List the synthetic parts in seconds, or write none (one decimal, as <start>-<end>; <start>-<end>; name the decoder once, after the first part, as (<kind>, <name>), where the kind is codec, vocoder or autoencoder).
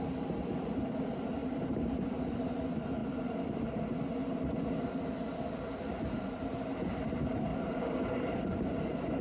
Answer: 1.4-2.1 (vocoder, BigVGAN v2); 3.0-3.8; 7.5-9.2